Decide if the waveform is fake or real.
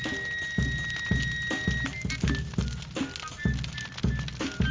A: real